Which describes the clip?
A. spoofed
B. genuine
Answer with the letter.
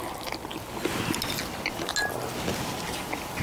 B